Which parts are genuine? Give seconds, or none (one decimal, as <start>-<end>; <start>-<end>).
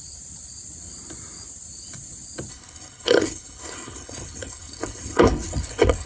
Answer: 0.0-2.5